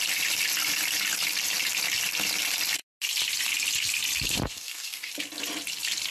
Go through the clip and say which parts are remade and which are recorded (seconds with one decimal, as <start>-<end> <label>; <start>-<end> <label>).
0.0-4.5 recorded; 4.5-5.1 remade; 5.1-6.1 recorded